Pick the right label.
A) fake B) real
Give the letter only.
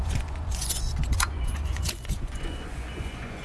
A